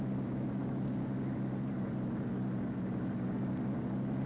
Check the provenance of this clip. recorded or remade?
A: recorded